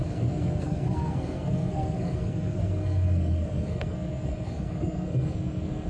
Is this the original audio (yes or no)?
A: no